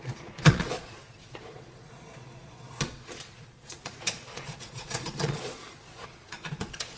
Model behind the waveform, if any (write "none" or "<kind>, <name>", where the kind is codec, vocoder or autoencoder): vocoder, Vocos